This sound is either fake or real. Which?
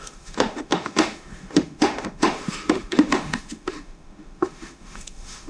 fake